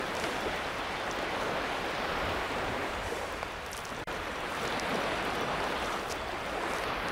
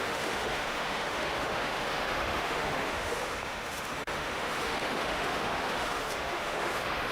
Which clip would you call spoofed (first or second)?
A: second